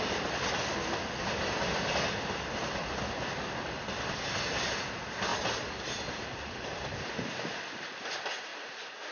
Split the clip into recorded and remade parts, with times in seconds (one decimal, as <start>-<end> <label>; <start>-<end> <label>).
0.0-9.1 recorded